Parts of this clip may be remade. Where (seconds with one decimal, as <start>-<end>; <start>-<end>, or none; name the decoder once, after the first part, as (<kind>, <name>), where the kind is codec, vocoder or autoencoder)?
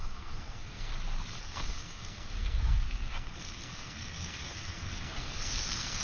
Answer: 0.0-0.9 (codec, SNAC); 1.4-6.0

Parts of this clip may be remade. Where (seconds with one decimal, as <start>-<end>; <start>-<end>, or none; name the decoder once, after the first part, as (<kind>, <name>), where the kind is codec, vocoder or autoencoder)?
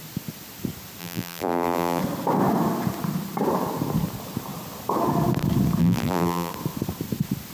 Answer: 1.0-2.0 (vocoder, BigVGAN v2); 5.8-6.5